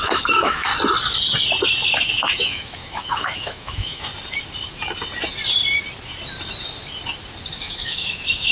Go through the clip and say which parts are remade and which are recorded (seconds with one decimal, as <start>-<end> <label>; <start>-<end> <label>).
0.0-0.7 remade; 0.7-1.9 recorded; 1.9-4.1 remade; 4.1-7.5 recorded; 7.5-8.5 remade